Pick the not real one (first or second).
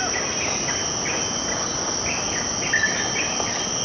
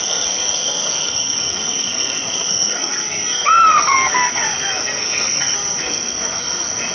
second